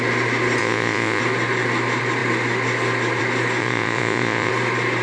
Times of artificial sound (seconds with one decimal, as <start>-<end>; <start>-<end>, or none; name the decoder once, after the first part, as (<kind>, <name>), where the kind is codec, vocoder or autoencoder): 0.6-1.2 (vocoder, Vocos); 3.6-4.5